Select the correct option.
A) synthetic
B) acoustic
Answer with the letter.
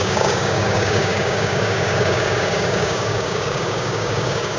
A